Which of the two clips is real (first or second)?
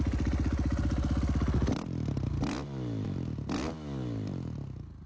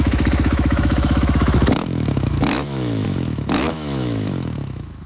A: first